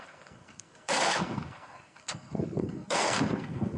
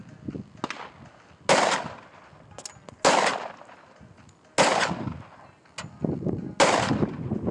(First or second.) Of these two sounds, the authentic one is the second